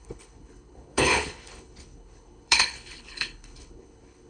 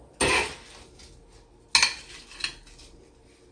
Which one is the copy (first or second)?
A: first